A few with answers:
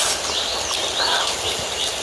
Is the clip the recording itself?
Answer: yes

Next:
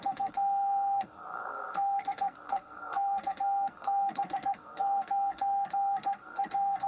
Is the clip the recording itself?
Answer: no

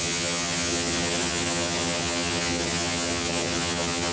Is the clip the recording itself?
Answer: no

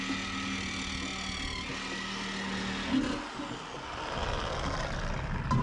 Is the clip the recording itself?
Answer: yes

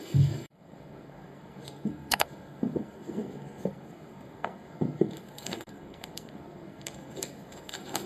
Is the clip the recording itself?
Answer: no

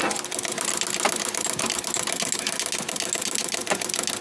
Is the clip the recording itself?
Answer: yes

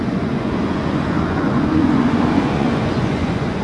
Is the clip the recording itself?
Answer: no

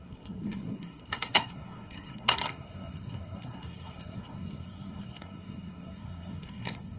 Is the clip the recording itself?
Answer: no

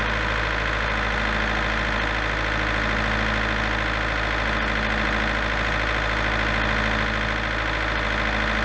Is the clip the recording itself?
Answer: yes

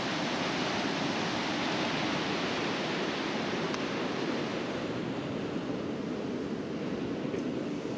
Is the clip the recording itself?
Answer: yes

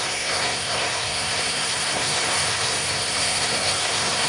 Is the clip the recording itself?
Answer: no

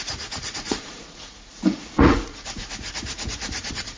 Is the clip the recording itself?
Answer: no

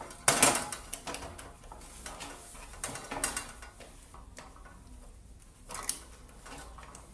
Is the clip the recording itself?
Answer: yes